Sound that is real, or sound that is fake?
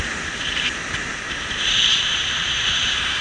fake